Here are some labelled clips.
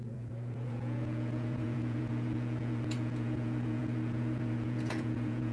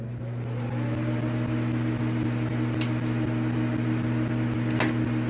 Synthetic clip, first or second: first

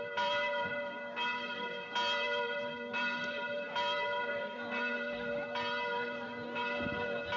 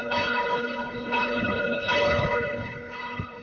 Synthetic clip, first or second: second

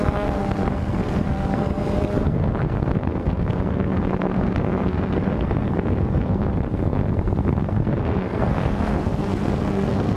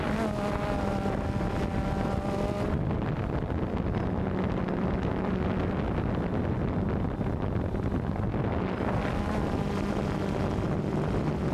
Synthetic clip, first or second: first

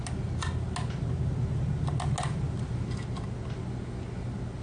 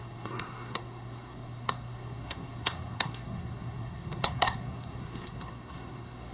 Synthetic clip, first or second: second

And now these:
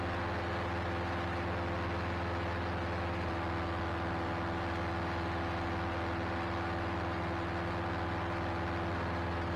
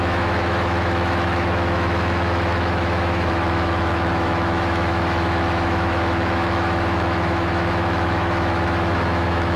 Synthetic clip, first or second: second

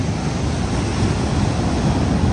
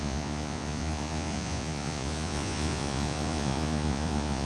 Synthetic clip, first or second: second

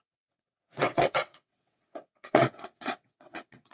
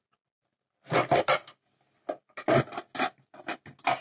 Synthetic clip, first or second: first